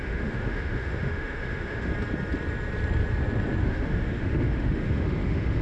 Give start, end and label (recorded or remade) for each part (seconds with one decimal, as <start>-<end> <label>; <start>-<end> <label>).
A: 0.0-1.9 remade; 1.9-3.6 recorded; 3.6-5.6 remade